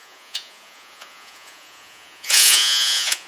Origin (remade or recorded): remade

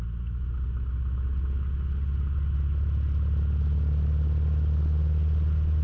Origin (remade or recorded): recorded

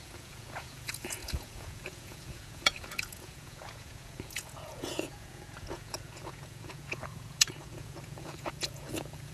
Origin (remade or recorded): remade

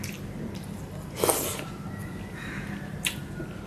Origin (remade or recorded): recorded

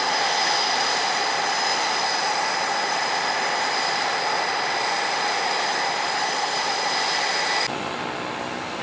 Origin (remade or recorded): recorded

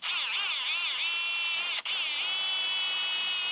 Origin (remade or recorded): recorded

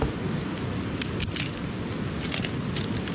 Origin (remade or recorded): recorded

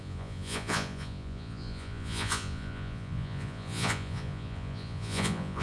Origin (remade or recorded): remade